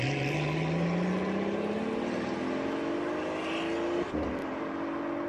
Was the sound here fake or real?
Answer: real